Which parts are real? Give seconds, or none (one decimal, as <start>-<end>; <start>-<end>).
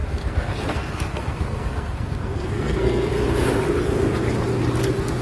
3.1-5.2